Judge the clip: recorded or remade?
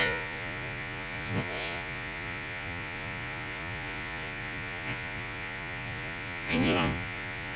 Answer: remade